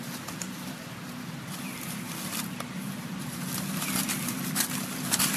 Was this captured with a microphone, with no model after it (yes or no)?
no